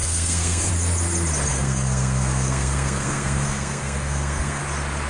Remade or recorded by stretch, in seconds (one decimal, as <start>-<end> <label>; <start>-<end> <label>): 0.0-0.7 remade; 0.7-1.5 recorded; 1.5-4.6 remade; 4.6-5.1 recorded